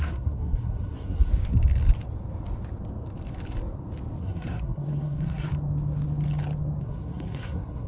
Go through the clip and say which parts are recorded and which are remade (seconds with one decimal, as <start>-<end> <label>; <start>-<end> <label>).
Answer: 0.0-1.3 remade; 1.3-4.2 recorded; 4.2-5.5 remade; 5.5-6.8 recorded; 6.8-7.9 remade